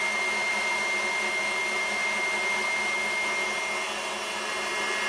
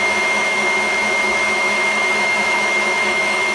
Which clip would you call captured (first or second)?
first